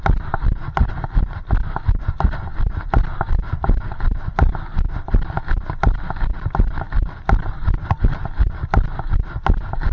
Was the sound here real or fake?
real